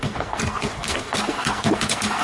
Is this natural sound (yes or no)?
no